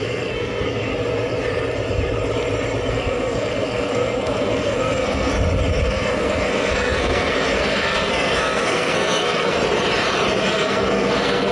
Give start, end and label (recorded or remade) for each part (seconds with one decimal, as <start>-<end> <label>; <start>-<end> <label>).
0.0-0.9 remade; 0.9-2.9 recorded; 2.9-5.3 remade; 5.3-5.8 recorded; 5.8-9.6 remade; 9.6-10.4 recorded; 10.4-11.5 remade